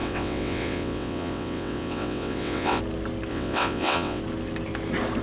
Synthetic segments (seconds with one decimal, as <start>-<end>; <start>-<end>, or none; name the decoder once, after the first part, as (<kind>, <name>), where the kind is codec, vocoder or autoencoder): 0.0-2.8 (vocoder, WaveNeXt); 3.3-4.2